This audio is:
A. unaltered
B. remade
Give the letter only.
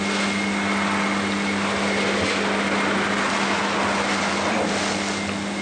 A